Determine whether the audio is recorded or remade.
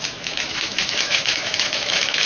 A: remade